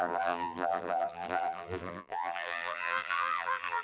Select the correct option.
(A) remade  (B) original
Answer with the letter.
A